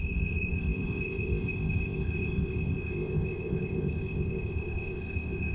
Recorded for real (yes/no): no